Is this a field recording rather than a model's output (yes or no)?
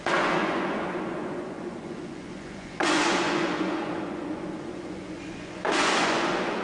no